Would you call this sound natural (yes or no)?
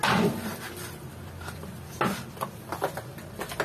yes